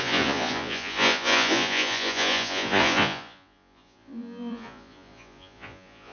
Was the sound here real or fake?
fake